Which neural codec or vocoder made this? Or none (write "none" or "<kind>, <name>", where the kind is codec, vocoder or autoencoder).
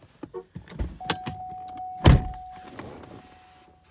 none